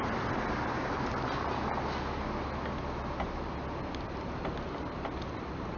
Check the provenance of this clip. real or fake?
real